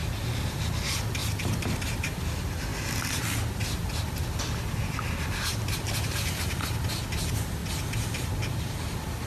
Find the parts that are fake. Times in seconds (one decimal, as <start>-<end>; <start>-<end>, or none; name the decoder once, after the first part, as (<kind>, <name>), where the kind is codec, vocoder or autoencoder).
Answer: 1.2-1.8 (vocoder, BigVGAN v2)